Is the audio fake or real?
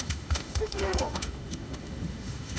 fake